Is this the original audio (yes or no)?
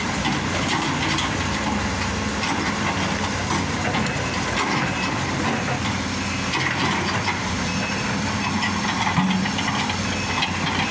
yes